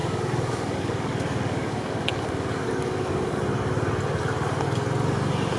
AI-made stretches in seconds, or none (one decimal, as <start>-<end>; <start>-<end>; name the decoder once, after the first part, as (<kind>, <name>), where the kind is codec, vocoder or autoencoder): 0.0-3.4 (codec, DAC)